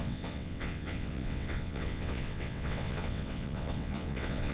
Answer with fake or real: fake